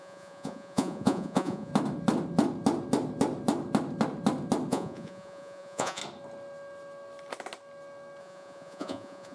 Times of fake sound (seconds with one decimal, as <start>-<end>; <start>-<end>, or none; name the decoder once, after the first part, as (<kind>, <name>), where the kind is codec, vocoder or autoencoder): 0.0-1.7 (vocoder, Vocos); 4.7-6.0; 8.2-9.3